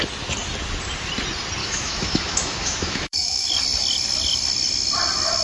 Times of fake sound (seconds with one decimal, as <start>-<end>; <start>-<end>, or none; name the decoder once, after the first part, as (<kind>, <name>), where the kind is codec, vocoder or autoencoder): 1.6-3.5 (autoencoder, DAC-VAE)